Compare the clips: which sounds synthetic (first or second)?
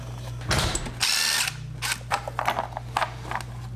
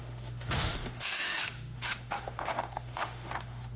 second